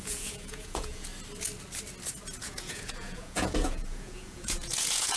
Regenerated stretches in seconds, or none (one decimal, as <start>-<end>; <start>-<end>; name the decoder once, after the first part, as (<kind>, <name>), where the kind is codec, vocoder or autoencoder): 0.0-1.1 (vocoder, Vocos); 2.4-5.2